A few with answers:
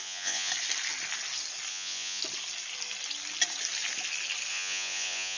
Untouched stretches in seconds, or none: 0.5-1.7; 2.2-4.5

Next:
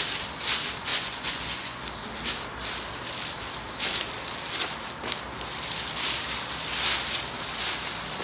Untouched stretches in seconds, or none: 0.0-0.9; 1.8-8.2

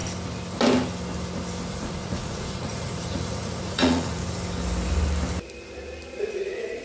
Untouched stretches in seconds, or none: 0.0-1.7; 4.2-6.2